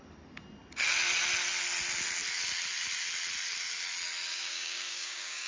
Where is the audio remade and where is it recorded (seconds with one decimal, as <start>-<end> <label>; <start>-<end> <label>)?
0.0-4.3 recorded; 4.3-5.5 remade